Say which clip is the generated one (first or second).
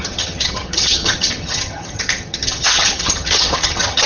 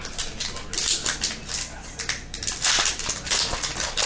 first